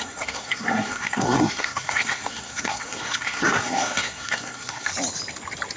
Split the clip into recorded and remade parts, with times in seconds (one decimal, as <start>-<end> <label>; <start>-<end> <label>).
0.0-4.9 remade; 4.9-5.8 recorded